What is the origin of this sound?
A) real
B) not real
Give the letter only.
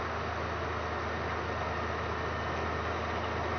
A